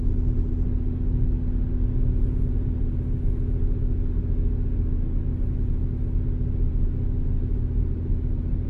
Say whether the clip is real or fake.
real